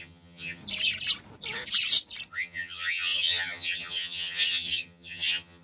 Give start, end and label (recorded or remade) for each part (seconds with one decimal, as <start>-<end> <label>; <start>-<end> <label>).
0.0-0.6 remade; 0.6-2.3 recorded; 2.3-5.6 remade